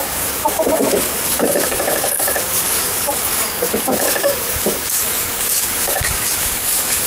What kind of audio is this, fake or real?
fake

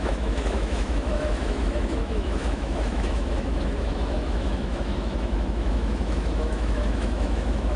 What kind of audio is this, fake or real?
fake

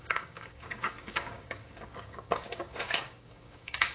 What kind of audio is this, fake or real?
fake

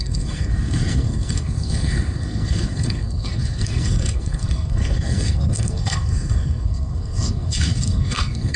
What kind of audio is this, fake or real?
fake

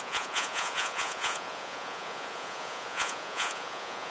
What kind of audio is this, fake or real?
fake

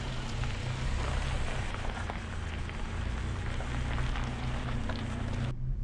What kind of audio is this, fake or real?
real